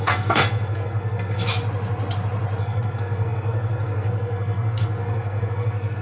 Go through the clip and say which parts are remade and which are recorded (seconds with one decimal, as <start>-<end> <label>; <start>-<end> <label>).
0.0-1.5 remade; 1.5-2.6 recorded; 2.6-6.0 remade